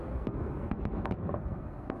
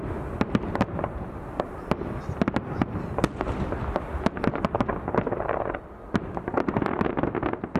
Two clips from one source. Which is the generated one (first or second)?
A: first